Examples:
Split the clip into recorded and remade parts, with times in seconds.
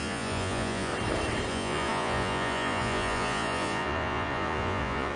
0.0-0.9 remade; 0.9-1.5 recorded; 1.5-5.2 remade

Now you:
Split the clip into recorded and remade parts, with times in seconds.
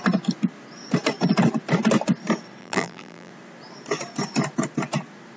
0.0-2.6 recorded; 2.6-3.3 remade; 3.3-5.4 recorded